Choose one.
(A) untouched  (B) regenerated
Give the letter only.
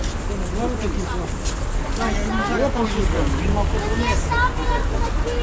A